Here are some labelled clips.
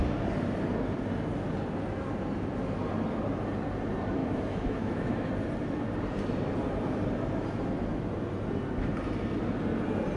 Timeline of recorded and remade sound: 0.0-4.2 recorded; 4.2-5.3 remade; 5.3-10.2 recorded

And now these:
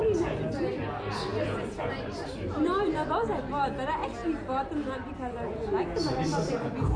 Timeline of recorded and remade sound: 0.0-1.3 recorded; 1.3-3.5 remade; 3.5-7.0 recorded

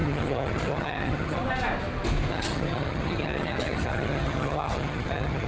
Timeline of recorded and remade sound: 0.0-1.4 remade; 1.4-2.3 recorded; 2.3-5.5 remade

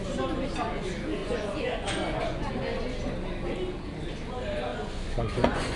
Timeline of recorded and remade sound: 0.0-1.2 recorded; 1.2-2.5 remade; 2.5-4.7 recorded; 4.7-5.8 remade

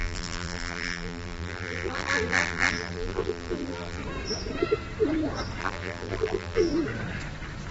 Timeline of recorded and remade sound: 0.0-4.0 remade; 4.0-5.6 recorded; 5.6-6.7 remade; 6.7-7.7 recorded